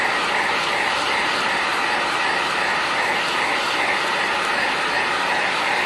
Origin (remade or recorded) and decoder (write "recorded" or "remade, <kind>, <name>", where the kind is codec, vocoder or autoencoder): recorded